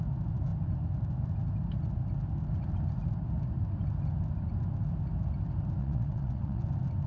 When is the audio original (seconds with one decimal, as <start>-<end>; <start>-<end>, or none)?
0.0-5.8; 6.6-7.1